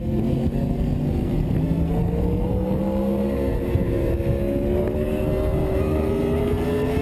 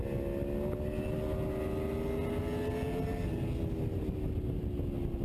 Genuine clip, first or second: second